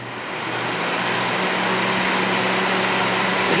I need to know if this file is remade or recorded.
recorded